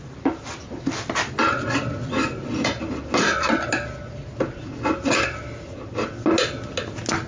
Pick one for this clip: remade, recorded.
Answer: recorded